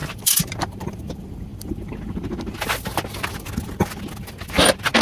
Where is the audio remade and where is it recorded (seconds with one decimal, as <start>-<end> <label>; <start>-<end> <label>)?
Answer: 0.0-0.9 remade; 0.9-5.0 recorded

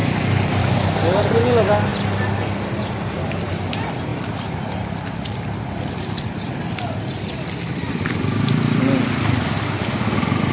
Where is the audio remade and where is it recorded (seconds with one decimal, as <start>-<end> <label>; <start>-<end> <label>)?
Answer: 0.0-1.2 remade; 1.2-4.1 recorded; 4.1-8.8 remade; 8.8-10.5 recorded

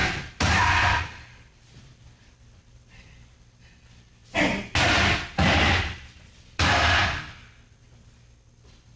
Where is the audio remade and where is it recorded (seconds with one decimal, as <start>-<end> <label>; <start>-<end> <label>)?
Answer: 0.0-4.2 remade; 4.2-5.8 recorded; 5.8-7.0 remade; 7.0-9.0 recorded